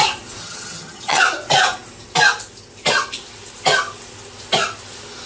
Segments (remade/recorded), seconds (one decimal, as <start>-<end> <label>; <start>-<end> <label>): 0.0-0.4 recorded; 0.4-1.2 remade; 1.2-5.3 recorded